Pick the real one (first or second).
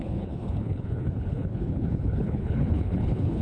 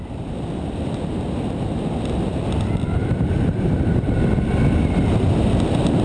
second